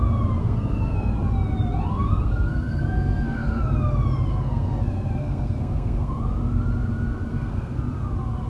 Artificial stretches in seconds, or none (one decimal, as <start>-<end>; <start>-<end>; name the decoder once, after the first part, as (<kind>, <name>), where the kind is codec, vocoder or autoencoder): 0.4-1.1 (codec, SNAC); 1.9-3.6; 4.3-6.2; 7.3-7.8